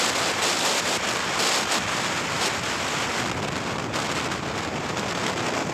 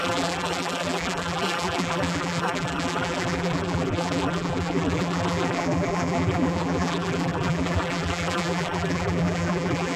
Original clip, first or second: first